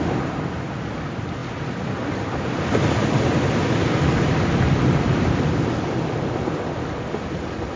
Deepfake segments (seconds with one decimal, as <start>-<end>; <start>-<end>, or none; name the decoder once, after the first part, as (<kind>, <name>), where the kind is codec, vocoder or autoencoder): none